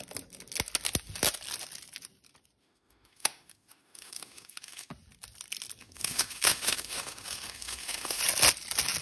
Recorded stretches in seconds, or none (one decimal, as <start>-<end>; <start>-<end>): 0.0-2.6; 4.9-5.8; 8.2-9.0